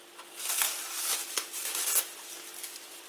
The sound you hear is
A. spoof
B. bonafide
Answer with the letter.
B